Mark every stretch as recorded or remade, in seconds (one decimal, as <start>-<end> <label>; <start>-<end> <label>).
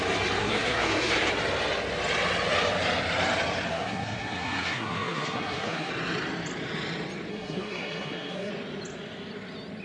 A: 0.0-0.4 recorded; 0.4-1.3 remade; 1.3-3.7 recorded; 3.7-5.9 remade; 5.9-7.3 recorded; 7.3-8.5 remade; 8.5-9.8 recorded